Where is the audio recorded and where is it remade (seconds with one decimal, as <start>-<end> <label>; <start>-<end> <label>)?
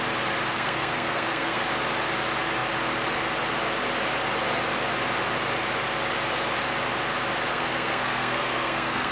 0.0-0.5 recorded; 0.5-1.6 remade; 1.6-7.5 recorded; 7.5-9.1 remade